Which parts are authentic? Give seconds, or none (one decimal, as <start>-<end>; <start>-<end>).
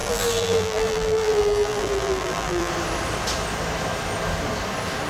2.7-5.1